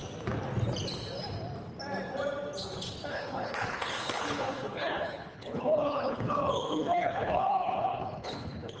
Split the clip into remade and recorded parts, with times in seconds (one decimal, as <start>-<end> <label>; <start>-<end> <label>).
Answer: 0.0-3.1 recorded; 3.1-8.8 remade